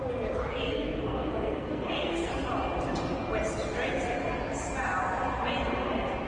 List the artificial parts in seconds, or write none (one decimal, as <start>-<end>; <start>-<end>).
0.5-2.3